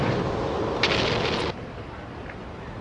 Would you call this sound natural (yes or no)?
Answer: yes